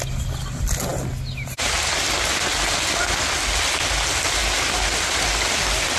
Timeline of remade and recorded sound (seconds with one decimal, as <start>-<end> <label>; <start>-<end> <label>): 0.0-6.0 recorded